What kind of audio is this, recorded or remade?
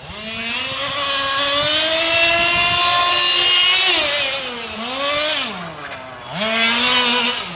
recorded